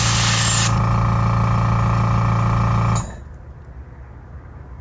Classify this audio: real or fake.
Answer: real